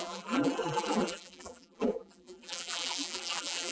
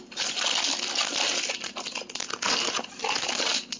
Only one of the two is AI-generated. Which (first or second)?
first